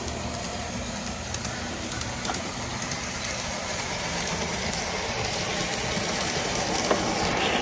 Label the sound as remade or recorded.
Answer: recorded